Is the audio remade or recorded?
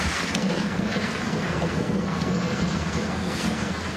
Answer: remade